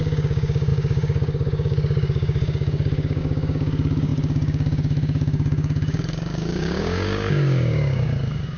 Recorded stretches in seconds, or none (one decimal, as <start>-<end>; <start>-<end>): none

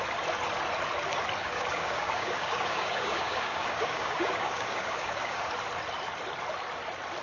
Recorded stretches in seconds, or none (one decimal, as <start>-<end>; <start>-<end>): 0.0-1.4; 5.5-7.2

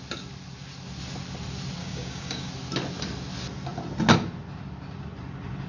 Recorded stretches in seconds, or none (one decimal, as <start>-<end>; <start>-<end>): 0.0-1.8; 2.5-5.7

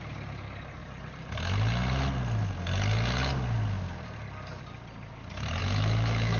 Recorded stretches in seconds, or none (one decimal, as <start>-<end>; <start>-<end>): 0.0-5.6

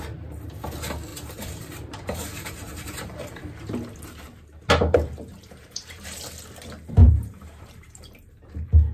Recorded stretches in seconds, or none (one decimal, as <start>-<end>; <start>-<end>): 0.0-1.1; 3.5-5.3; 6.2-7.0; 8.3-8.9

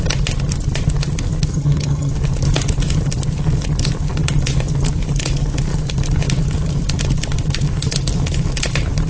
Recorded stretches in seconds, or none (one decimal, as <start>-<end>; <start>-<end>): 0.0-1.5; 2.1-9.1

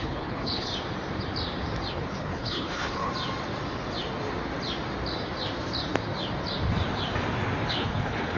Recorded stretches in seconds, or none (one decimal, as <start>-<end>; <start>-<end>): 0.7-1.9; 3.1-7.7